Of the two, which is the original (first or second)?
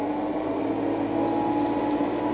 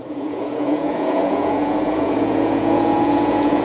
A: first